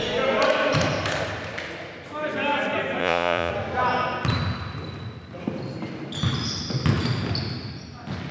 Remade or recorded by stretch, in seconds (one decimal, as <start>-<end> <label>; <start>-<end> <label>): 0.0-3.0 recorded; 3.0-3.5 remade; 3.5-8.3 recorded